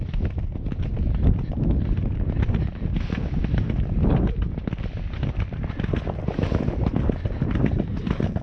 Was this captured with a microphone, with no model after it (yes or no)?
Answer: yes